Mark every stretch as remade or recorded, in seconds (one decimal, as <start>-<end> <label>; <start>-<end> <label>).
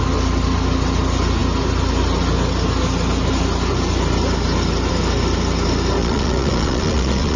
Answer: 0.0-6.0 recorded; 6.0-7.4 remade